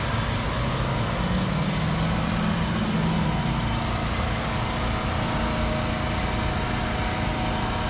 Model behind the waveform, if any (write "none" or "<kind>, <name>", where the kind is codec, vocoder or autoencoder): none